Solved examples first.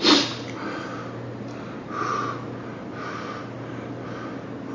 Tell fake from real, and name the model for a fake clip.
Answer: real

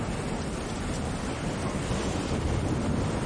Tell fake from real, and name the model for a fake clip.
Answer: real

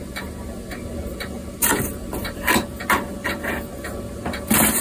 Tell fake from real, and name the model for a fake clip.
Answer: real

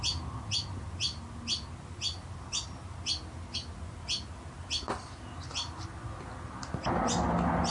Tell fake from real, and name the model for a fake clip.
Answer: real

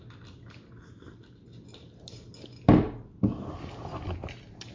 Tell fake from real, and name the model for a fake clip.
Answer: real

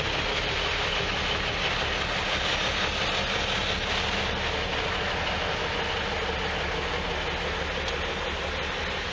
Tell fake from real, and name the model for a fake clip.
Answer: real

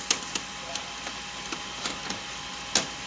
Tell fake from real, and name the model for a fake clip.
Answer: real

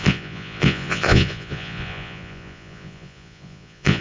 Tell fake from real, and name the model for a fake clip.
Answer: fake, vocoder, Vocos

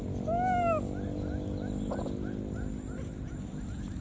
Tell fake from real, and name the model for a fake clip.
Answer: real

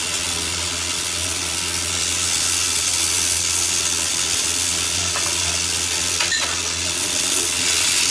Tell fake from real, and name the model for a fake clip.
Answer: fake, vocoder, Vocos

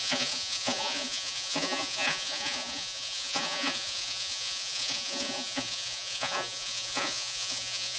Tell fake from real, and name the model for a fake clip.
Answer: fake, vocoder, Vocos